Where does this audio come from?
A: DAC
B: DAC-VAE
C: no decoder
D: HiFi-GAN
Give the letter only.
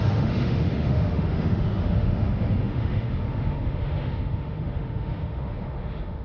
B